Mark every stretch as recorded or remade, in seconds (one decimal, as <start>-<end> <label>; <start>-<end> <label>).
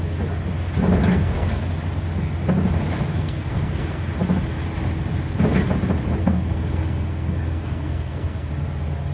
0.0-1.0 recorded; 1.0-1.6 remade; 1.6-3.1 recorded; 3.1-4.1 remade; 4.1-6.2 recorded; 6.2-8.5 remade; 8.5-9.1 recorded